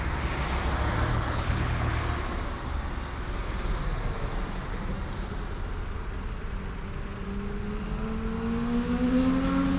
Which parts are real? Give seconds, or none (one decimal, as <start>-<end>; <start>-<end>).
0.0-1.1; 1.9-9.8